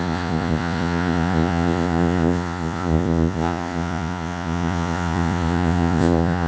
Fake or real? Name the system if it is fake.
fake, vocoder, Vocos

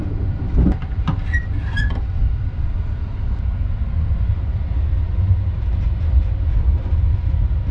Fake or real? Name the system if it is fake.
real